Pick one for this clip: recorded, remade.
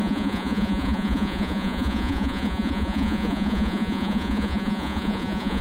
remade